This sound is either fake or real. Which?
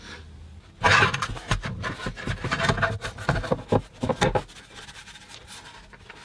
fake